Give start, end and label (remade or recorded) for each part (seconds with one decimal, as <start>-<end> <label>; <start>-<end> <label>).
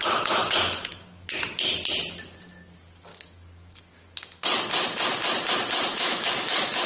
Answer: 0.0-0.4 recorded; 0.4-1.5 remade; 1.5-3.1 recorded; 3.1-4.4 remade; 4.4-5.9 recorded; 5.9-6.9 remade